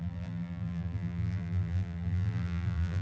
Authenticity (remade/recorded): remade